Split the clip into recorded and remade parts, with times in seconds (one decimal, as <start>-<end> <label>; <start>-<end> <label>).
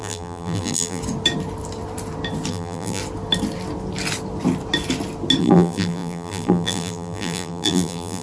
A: 0.0-1.0 remade; 1.0-2.5 recorded; 2.5-3.0 remade; 3.0-5.4 recorded; 5.4-8.2 remade